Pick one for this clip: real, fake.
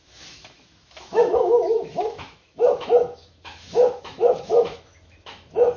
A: fake